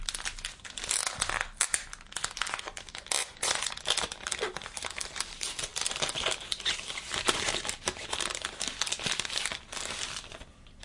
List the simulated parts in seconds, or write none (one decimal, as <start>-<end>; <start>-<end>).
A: 3.2-3.7